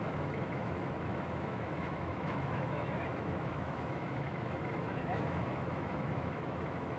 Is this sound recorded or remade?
remade